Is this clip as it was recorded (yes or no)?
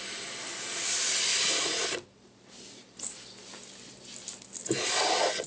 yes